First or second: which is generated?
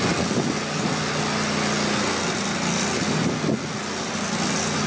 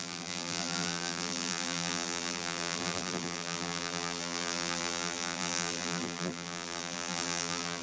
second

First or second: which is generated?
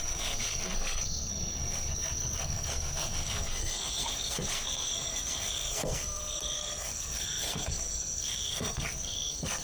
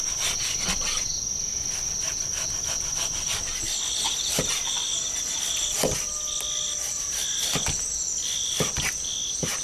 first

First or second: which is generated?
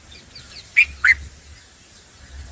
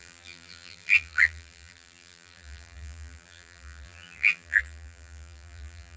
second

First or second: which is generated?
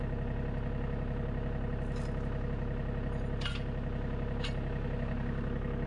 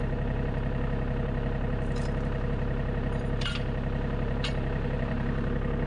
second